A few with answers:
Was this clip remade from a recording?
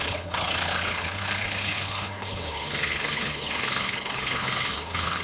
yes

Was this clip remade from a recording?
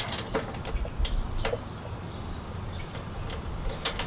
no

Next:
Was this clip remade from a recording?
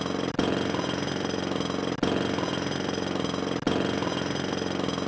no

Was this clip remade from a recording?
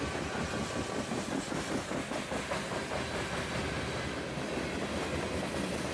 no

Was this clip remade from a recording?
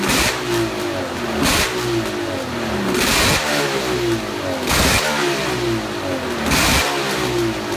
no